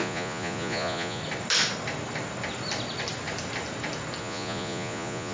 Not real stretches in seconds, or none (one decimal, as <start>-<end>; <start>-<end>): 0.0-1.2; 4.2-5.3